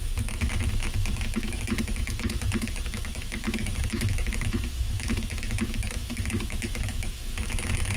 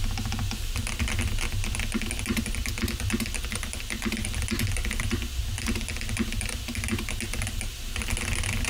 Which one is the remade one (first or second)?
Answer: first